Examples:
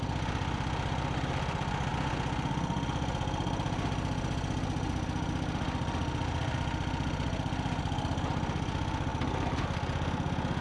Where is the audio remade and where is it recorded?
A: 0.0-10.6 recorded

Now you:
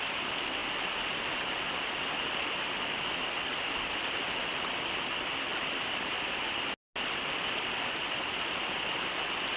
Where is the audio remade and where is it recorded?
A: 0.0-9.6 recorded